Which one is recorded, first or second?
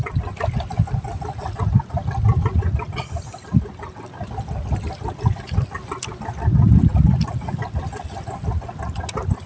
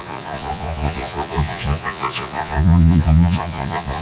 first